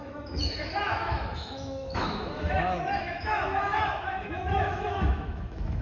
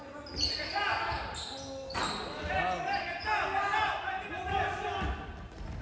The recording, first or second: second